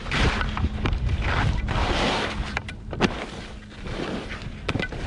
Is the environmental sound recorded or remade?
recorded